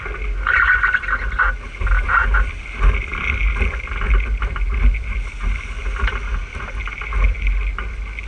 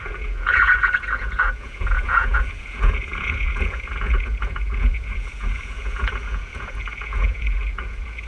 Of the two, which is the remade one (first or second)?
second